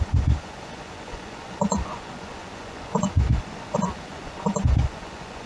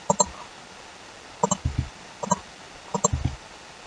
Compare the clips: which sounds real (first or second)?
second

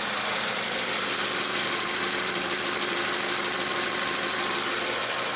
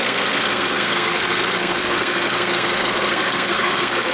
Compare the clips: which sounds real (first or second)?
first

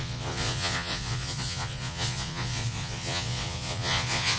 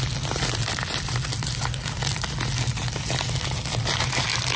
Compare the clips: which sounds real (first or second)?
second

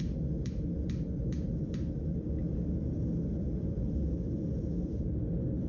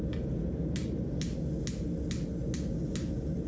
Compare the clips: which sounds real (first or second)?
second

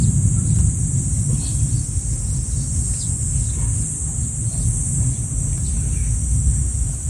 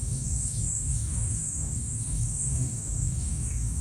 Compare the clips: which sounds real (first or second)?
first